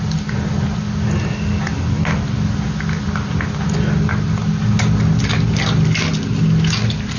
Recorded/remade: recorded